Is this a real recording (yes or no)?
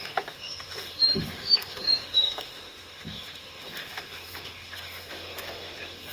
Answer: no